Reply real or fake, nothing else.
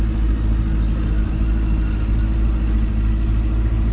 real